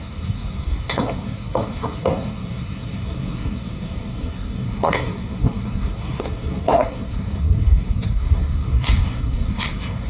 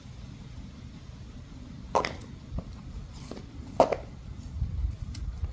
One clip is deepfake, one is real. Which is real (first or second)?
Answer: second